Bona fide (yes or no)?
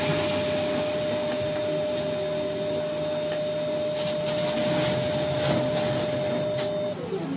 yes